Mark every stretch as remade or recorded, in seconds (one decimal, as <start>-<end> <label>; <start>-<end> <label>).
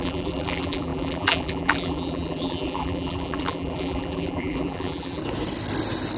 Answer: 0.0-5.2 remade; 5.2-6.2 recorded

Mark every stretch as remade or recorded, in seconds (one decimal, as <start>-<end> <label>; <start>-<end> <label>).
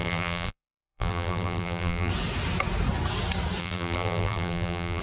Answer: 0.0-2.1 remade; 2.1-3.6 recorded; 3.6-5.0 remade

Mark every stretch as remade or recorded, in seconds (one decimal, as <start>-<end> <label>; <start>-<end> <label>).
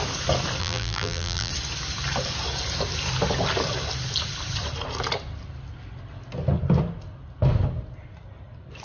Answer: 0.0-0.6 recorded; 0.6-1.5 remade; 1.5-8.8 recorded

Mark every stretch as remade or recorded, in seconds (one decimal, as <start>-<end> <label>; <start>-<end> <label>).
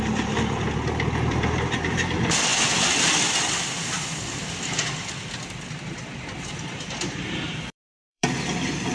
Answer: 0.0-2.5 remade; 2.5-3.4 recorded; 3.4-5.2 remade; 5.2-6.5 recorded; 6.5-8.9 remade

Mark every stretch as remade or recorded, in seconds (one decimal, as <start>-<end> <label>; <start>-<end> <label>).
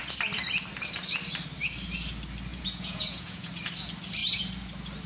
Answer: 0.0-2.5 recorded; 2.5-3.5 remade; 3.5-5.1 recorded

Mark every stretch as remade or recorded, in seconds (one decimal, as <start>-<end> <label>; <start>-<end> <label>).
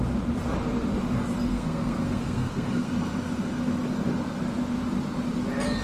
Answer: 0.0-1.5 recorded; 1.5-2.9 remade; 2.9-5.8 recorded